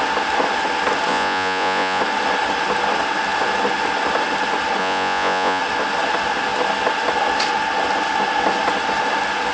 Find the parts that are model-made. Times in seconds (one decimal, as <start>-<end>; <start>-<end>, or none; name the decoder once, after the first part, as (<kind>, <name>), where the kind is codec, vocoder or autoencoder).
1.1-2.0 (vocoder, Vocos); 4.8-5.6